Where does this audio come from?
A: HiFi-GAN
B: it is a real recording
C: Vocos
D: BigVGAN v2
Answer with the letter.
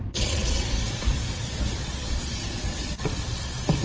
C